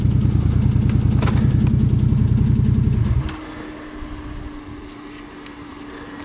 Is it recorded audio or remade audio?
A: recorded